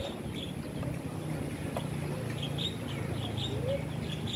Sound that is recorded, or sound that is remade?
recorded